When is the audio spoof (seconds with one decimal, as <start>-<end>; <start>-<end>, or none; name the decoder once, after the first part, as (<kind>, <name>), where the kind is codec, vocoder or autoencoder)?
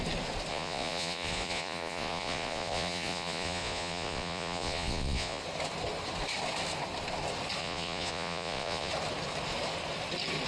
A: 0.5-5.4 (vocoder, Vocos); 7.6-8.9